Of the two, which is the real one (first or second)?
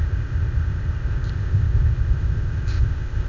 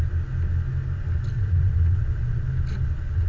second